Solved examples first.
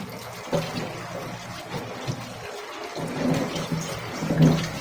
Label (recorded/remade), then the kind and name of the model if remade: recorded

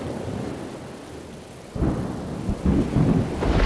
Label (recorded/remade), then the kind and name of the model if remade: recorded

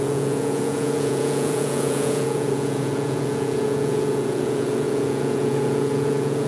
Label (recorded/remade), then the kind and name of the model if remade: remade, vocoder, Vocos